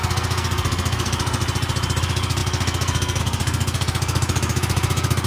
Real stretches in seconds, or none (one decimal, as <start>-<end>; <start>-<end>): 1.4-2.0